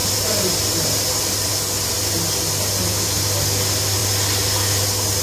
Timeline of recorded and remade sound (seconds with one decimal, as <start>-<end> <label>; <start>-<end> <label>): 0.0-1.5 remade; 1.5-5.2 recorded